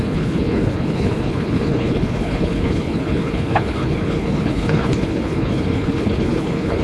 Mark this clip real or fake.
fake